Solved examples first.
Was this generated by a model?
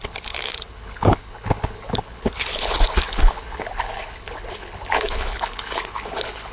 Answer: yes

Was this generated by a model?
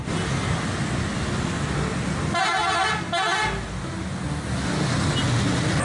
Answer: no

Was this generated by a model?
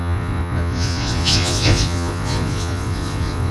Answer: yes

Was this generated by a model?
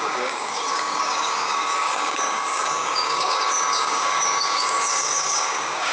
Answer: yes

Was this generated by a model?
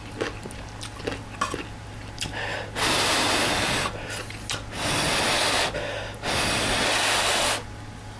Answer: no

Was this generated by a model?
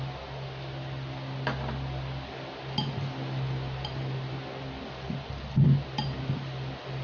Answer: no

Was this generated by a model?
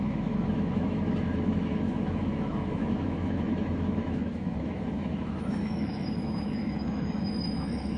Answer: yes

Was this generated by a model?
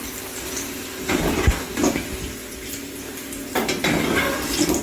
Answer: no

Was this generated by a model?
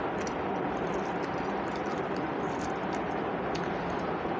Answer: no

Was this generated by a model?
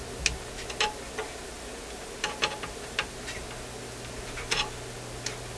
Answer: no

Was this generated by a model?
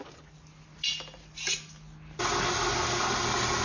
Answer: no